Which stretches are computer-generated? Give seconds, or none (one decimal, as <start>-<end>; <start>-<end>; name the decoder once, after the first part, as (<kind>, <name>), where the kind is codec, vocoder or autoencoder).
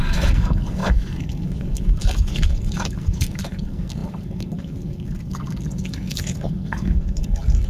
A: 0.0-7.7 (codec, SNAC)